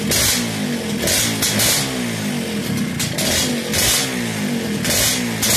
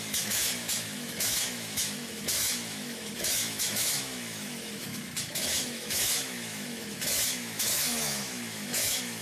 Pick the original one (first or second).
first